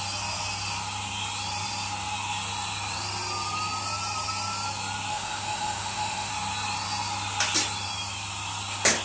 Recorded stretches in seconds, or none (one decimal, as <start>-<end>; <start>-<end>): 0.0-5.1; 6.3-9.0